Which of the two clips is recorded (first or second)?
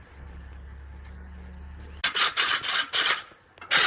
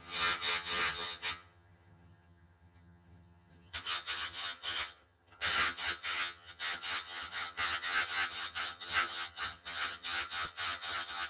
first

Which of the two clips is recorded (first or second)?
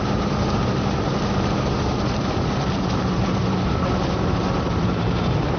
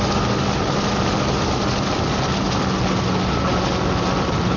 second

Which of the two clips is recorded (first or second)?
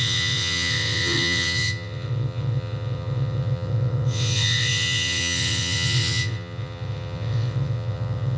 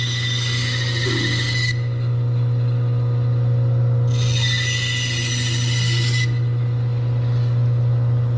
second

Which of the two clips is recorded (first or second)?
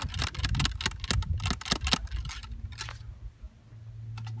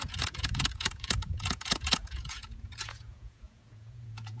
first